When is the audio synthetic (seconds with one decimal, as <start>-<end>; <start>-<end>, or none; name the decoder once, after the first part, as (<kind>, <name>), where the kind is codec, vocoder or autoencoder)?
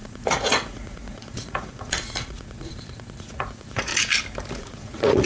0.0-3.9 (vocoder, Vocos); 4.6-5.3